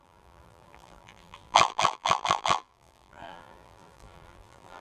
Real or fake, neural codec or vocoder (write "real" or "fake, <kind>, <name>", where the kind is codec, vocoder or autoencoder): fake, vocoder, BigVGAN v2